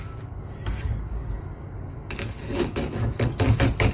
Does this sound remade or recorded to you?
remade